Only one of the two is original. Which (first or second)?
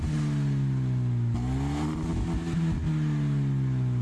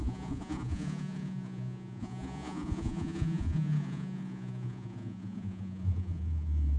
first